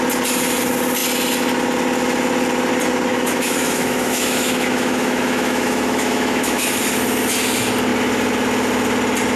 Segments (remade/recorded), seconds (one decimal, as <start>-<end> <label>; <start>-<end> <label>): 0.0-3.1 recorded; 3.1-6.8 remade; 6.8-9.4 recorded